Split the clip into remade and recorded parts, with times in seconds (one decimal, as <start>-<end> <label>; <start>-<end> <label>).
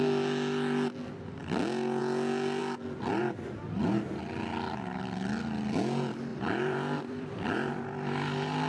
0.0-6.3 recorded; 6.3-8.7 remade